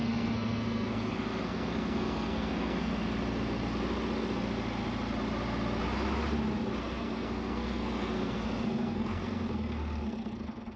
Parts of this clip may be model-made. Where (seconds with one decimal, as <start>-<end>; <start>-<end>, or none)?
0.0-2.9; 6.8-10.8